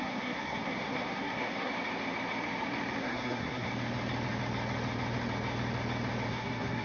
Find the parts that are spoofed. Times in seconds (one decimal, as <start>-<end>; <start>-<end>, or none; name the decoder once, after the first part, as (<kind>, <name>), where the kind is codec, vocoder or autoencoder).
0.0-1.7 (codec, SNAC); 3.0-3.7; 6.3-6.8